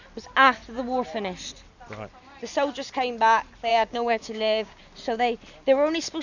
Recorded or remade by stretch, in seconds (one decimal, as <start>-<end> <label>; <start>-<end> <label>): 0.0-3.7 recorded; 3.7-4.8 remade; 4.8-6.2 recorded